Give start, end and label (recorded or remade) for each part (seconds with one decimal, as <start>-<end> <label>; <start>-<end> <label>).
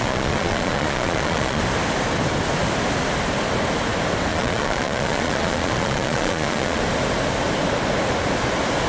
0.0-1.6 remade; 1.6-4.3 recorded; 4.3-6.8 remade; 6.8-8.9 recorded